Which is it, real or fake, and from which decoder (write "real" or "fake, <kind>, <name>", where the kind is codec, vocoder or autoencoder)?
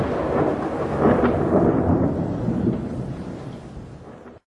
real